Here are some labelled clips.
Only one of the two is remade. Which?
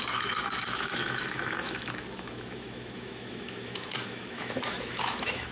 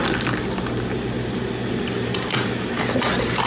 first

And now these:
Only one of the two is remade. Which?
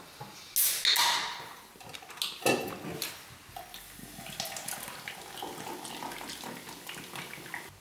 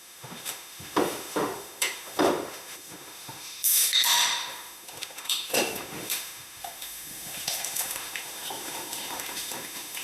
second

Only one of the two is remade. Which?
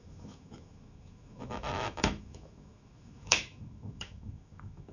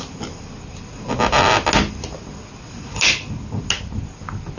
first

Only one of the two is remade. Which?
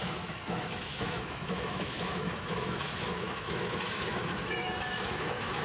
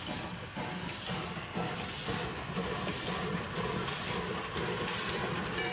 first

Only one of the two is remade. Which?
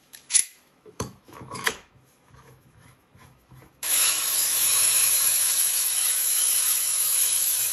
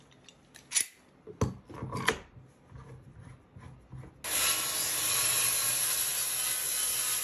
first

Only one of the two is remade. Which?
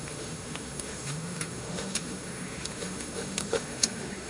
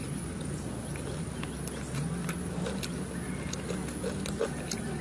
first